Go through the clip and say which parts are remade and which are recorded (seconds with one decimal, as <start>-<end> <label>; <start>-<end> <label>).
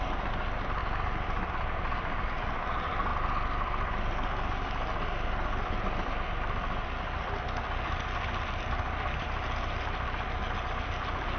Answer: 0.0-11.4 recorded